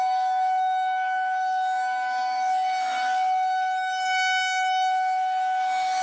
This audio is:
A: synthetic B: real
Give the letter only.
A